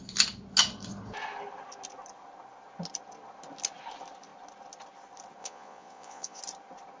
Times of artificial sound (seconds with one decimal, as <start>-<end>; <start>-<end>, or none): 5.4-6.4